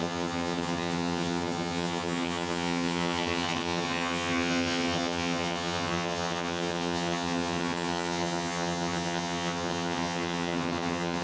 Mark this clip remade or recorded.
remade